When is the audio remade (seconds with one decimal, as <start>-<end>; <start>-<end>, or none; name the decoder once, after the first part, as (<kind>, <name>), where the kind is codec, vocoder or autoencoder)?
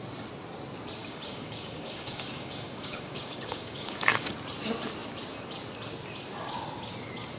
1.0-4.3 (codec, DAC)